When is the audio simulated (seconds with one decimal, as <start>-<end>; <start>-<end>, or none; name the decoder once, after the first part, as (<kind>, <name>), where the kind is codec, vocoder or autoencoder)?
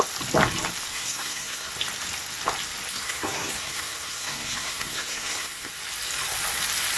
0.9-1.7 (codec, SNAC); 2.9-5.7